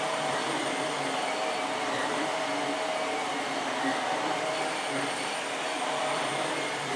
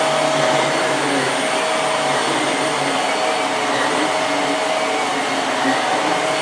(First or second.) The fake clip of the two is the first